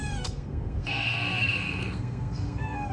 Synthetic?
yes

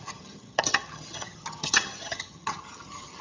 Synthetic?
yes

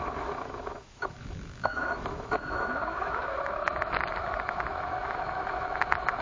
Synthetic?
yes